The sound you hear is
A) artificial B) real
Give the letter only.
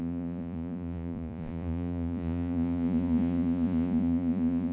A